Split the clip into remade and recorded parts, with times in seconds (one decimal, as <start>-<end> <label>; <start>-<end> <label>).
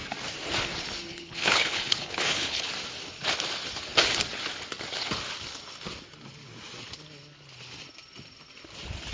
0.0-1.1 recorded; 1.1-2.7 remade; 2.7-9.1 recorded